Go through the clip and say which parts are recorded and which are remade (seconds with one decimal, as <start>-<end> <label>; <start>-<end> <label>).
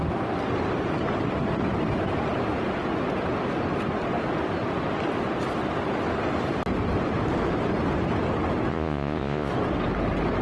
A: 0.0-8.7 recorded; 8.7-9.5 remade; 9.5-10.4 recorded